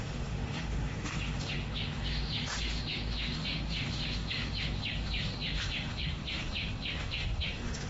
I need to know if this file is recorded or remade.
remade